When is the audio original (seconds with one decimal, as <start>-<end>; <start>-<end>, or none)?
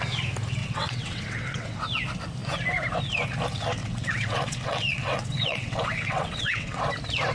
0.0-0.6; 1.8-3.8; 6.8-7.3